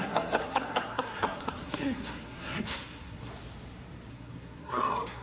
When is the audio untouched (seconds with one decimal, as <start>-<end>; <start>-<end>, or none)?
3.3-4.1

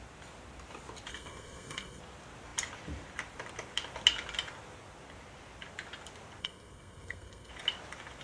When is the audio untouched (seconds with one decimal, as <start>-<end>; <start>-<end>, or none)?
0.0-1.1; 2.0-6.4; 7.5-8.2

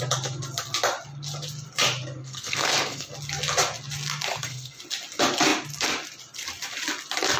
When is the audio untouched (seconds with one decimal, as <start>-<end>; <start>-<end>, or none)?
0.0-2.2; 3.1-4.3; 4.8-7.4

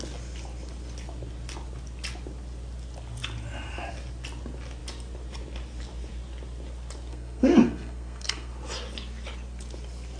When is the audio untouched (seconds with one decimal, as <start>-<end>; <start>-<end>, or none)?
0.0-7.1; 8.5-10.2

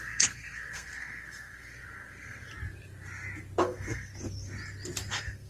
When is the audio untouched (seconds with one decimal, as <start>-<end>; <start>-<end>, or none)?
2.5-3.6; 4.1-5.1

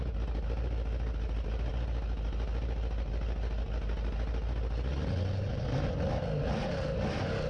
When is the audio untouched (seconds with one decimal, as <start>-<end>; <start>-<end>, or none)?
0.0-7.5

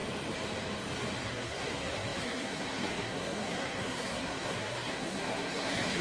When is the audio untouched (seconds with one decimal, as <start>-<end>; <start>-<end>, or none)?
0.0-1.2